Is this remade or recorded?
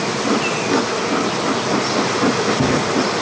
recorded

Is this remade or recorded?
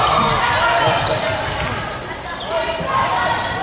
remade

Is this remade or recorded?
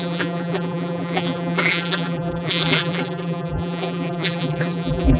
remade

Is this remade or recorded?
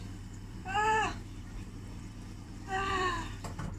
remade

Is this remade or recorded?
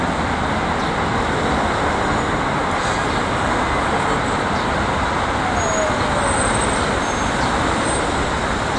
recorded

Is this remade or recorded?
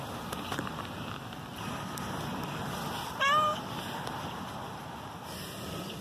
remade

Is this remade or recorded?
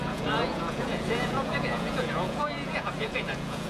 remade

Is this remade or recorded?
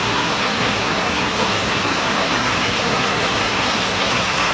remade